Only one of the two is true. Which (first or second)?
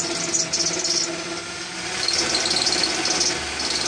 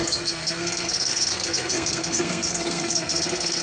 first